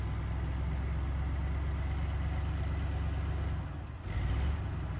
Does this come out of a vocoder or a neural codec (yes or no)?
no